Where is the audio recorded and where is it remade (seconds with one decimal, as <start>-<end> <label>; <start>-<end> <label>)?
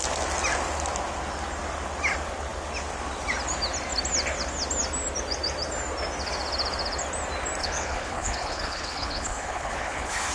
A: 0.0-7.6 recorded; 7.6-10.3 remade